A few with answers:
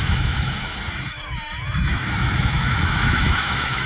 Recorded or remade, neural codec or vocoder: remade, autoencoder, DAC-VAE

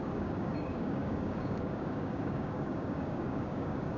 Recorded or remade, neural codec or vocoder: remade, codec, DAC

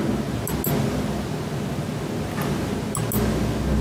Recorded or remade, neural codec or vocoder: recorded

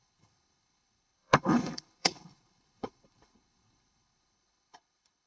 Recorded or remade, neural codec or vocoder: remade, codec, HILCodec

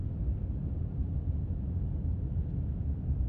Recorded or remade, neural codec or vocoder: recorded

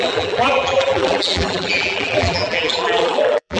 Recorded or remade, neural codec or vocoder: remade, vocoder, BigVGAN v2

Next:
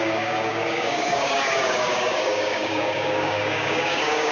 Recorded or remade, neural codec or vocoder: remade, codec, DAC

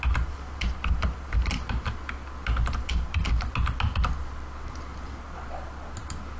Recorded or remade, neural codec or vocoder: recorded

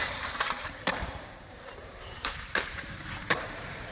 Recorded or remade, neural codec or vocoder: remade, vocoder, BigVGAN v2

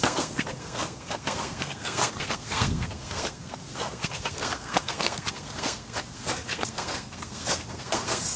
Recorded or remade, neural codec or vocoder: remade, codec, SNAC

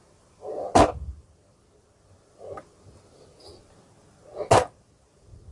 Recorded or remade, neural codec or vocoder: recorded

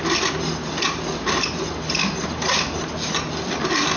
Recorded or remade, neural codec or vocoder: recorded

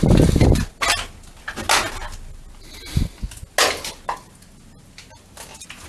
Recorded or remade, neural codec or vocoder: recorded